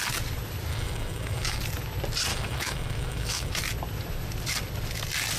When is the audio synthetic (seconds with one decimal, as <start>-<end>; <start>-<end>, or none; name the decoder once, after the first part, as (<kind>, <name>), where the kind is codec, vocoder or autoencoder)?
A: 0.7-1.6 (autoencoder, DAC-VAE); 2.3-3.6